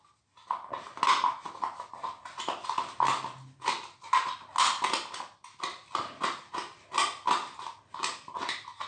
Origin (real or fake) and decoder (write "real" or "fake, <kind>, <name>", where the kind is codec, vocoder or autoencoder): real